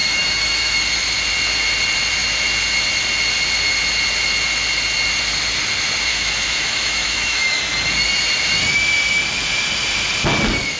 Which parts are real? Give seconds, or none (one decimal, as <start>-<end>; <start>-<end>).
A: 0.8-6.1; 7.6-10.8

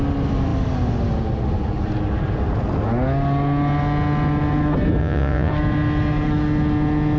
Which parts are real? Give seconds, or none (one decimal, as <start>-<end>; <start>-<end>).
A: 0.0-5.0; 5.5-7.2

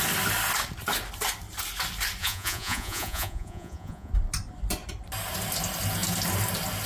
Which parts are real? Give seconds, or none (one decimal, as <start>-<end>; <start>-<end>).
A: 0.0-2.2; 4.1-6.9

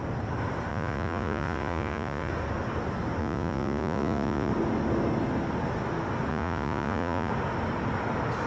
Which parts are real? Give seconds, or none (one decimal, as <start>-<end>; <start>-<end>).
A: 0.0-0.7; 2.3-3.2; 4.5-6.3; 7.3-8.5

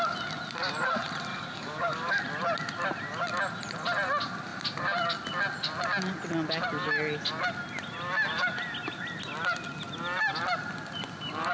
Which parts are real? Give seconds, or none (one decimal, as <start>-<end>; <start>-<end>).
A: 0.0-1.3; 2.2-11.5

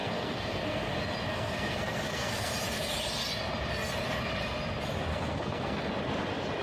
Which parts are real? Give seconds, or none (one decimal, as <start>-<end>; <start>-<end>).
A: 0.9-1.3; 2.5-5.1; 5.9-6.6

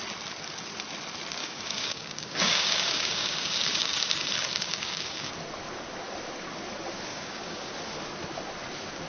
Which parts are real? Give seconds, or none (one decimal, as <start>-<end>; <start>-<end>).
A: 0.0-1.4; 5.3-7.1; 7.7-9.1

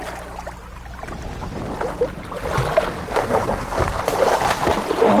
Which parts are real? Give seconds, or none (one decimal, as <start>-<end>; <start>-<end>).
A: 0.0-3.0; 4.0-5.2